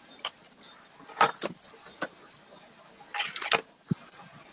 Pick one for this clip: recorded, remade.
recorded